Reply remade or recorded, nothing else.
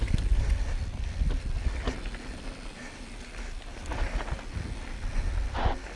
recorded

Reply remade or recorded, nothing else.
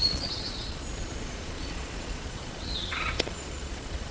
remade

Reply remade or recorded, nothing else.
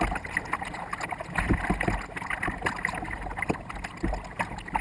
recorded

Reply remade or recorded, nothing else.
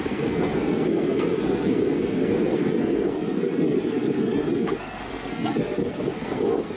remade